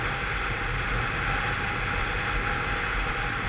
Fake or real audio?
real